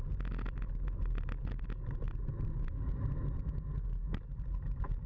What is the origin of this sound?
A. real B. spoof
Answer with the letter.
A